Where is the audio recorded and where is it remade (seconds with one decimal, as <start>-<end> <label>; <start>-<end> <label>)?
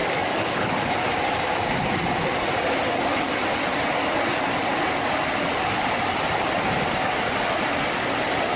0.0-0.9 remade; 0.9-8.6 recorded